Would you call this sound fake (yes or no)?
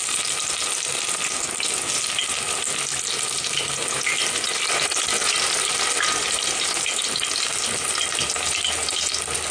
no